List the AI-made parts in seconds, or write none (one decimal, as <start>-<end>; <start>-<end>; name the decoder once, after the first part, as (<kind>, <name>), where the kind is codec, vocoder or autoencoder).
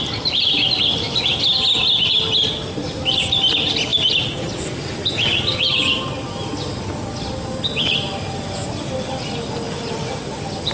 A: none